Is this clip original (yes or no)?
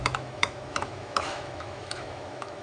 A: no